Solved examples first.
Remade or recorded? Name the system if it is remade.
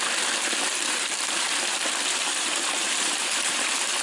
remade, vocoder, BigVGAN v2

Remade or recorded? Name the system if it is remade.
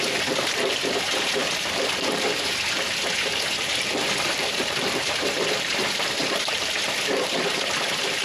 remade, vocoder, BigVGAN v2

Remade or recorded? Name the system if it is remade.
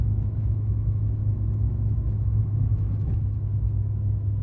remade, autoencoder, DAC-VAE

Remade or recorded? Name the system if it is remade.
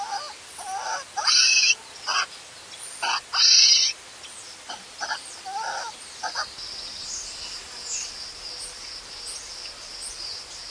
recorded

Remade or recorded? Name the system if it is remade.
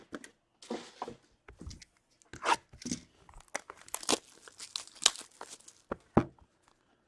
recorded